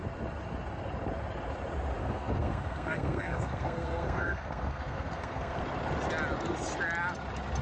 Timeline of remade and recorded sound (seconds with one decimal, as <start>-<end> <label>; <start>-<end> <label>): 0.0-2.0 recorded; 2.0-5.6 remade; 5.6-7.6 recorded